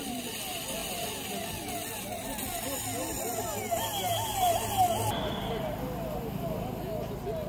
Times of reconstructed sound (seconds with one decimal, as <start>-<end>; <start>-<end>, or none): none